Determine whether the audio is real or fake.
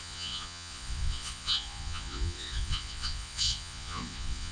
fake